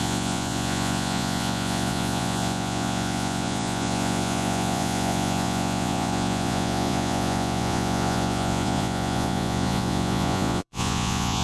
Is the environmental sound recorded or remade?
remade